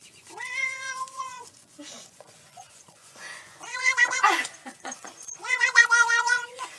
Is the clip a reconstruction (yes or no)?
yes